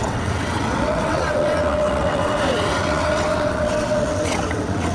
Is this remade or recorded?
remade